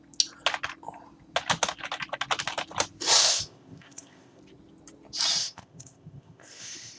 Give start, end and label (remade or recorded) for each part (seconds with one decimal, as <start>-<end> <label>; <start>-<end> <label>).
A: 0.0-3.2 recorded; 3.2-4.4 remade; 4.4-5.4 recorded; 5.4-7.0 remade